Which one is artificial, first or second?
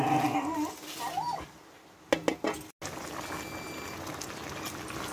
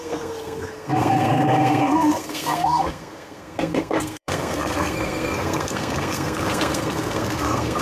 second